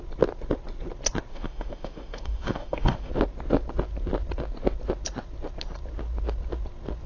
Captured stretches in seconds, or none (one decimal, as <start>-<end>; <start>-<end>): 0.0-1.3; 3.1-7.1